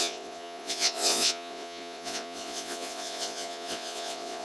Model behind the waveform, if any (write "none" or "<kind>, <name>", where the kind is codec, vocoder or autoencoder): vocoder, Vocos